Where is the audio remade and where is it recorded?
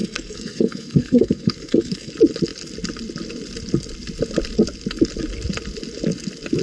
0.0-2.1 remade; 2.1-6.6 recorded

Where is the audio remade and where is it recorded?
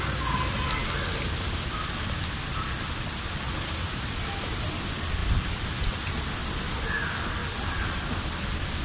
0.0-8.8 recorded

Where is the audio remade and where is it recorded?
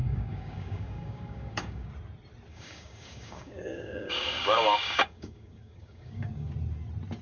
0.0-1.9 remade; 1.9-2.5 recorded; 2.5-6.5 remade; 6.5-7.2 recorded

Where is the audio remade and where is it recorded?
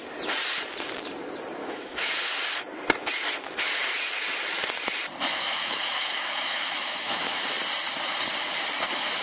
0.0-1.6 recorded; 1.6-2.2 remade; 2.2-5.3 recorded; 5.3-7.4 remade; 7.4-9.2 recorded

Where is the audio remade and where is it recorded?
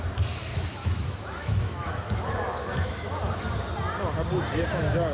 0.0-0.5 recorded; 0.5-3.6 remade; 3.6-5.1 recorded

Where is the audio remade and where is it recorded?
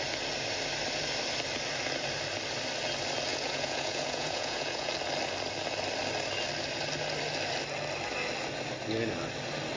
0.0-3.3 recorded; 3.3-4.9 remade; 4.9-9.8 recorded